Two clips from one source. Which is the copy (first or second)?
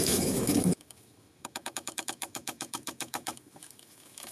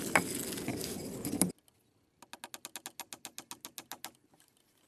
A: first